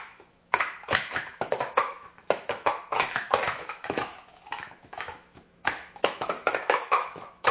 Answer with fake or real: fake